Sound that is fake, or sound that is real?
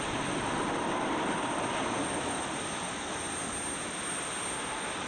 real